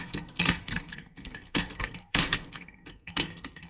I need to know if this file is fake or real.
fake